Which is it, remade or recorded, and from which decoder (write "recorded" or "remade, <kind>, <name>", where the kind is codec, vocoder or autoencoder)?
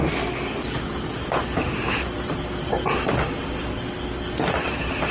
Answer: recorded